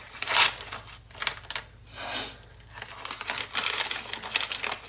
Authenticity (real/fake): real